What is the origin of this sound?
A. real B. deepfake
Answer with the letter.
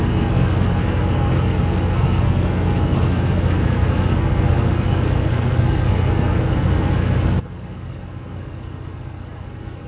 B